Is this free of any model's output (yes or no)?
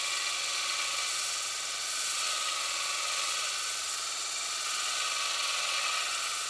no